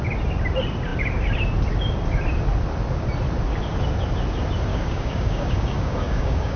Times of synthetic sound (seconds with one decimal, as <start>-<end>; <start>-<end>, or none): 4.7-6.6